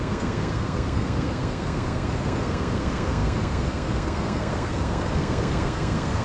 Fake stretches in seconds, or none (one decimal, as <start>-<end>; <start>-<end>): 0.0-6.2